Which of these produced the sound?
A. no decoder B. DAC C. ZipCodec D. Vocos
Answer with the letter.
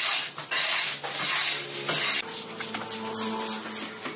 A